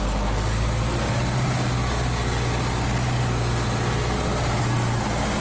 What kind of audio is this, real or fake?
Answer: real